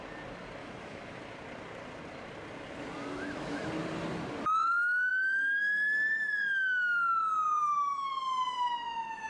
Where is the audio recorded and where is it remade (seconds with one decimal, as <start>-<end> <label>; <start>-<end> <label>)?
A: 0.0-0.6 recorded; 0.6-1.2 remade; 1.2-3.0 recorded; 3.0-3.7 remade; 3.7-7.6 recorded; 7.6-8.1 remade; 8.1-9.3 recorded